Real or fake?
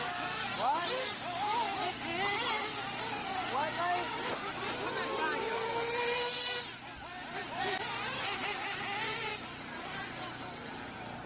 real